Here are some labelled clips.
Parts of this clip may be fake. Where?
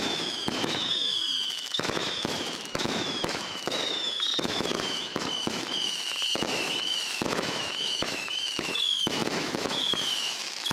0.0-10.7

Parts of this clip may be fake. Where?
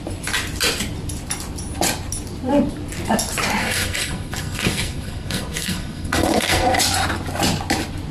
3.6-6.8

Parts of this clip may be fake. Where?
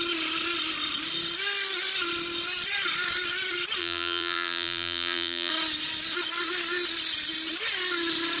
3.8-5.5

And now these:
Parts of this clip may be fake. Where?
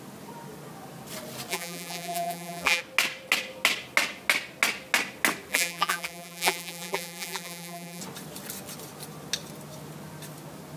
1.5-2.8; 5.5-8.0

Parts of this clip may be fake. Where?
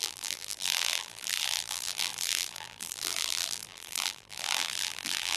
0.0-5.4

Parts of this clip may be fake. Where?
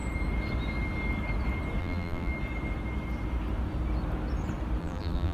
1.8-2.3; 4.8-5.3